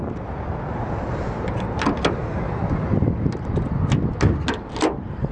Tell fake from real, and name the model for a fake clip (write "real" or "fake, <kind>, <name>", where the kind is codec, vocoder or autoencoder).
real